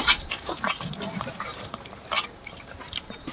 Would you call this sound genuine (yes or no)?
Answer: no